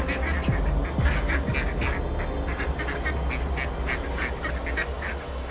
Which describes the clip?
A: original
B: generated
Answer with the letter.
A